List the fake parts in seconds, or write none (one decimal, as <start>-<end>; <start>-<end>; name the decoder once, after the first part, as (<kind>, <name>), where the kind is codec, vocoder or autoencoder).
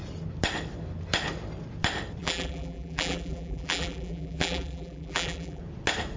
2.2-5.6 (vocoder, BigVGAN v2)